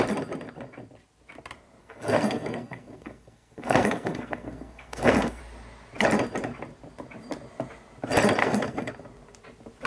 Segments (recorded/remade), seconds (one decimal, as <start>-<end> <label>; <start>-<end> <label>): 0.0-1.8 recorded; 1.8-5.4 remade; 5.4-8.4 recorded; 8.4-8.9 remade; 8.9-9.9 recorded